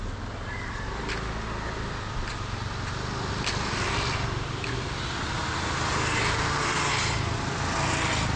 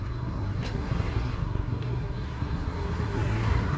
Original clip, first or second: first